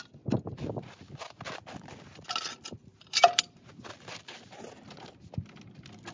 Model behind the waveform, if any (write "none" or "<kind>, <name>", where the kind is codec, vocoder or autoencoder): none